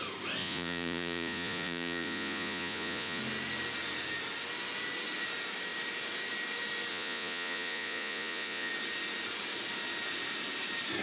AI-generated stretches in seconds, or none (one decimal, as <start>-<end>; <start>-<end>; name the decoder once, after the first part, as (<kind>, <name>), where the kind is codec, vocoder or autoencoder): 0.4-3.2 (vocoder, Vocos); 6.9-8.7